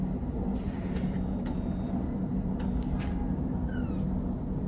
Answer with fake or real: real